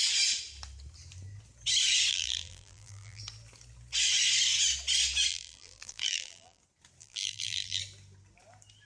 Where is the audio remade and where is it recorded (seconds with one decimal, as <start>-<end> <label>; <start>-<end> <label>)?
0.0-2.1 recorded; 2.1-3.2 remade; 3.2-5.3 recorded; 5.3-6.6 remade; 6.6-7.0 recorded; 7.0-7.8 remade; 7.8-8.9 recorded